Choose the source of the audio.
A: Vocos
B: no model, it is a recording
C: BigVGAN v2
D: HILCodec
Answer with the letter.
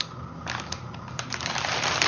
B